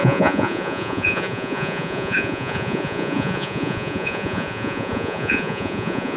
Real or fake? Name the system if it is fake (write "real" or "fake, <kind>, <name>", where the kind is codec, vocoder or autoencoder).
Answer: fake, vocoder, Vocos